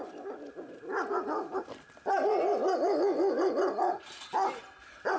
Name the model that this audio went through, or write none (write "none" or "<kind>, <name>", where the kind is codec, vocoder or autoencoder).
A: none